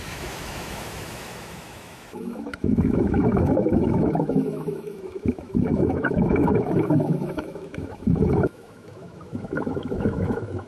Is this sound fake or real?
fake